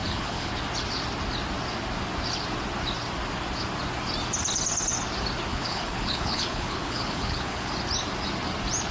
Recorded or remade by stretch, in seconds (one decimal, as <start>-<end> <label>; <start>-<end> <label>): 0.0-0.5 remade; 0.5-5.5 recorded; 5.5-7.7 remade; 7.7-8.9 recorded